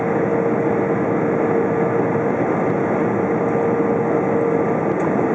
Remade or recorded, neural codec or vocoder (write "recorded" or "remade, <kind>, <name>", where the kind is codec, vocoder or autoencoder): recorded